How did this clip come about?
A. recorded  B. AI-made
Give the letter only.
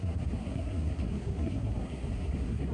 B